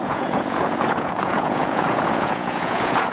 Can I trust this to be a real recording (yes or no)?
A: no